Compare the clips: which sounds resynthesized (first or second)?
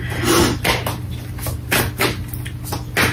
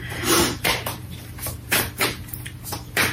second